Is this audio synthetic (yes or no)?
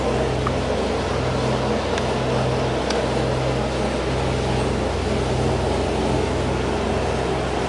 no